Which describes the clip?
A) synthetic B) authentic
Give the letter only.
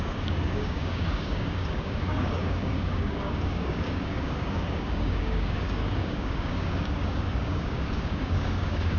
A